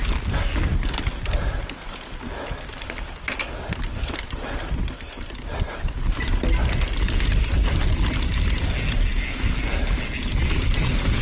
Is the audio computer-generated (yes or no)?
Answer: no